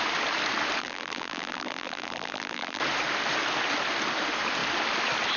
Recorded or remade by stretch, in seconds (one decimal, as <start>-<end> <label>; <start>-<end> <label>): 0.0-0.8 recorded; 0.8-2.8 remade; 2.8-5.4 recorded